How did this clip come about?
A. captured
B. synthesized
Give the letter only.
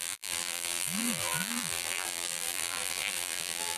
B